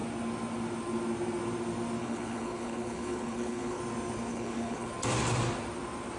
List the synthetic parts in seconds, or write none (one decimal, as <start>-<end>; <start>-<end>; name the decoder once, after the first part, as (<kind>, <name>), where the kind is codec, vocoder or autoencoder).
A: 2.0-3.8 (codec, HILCodec); 4.3-4.9